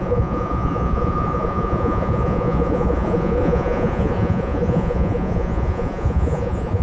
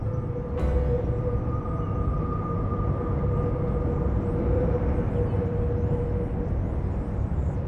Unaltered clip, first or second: second